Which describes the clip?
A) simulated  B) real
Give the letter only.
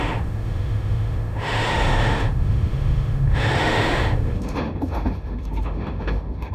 A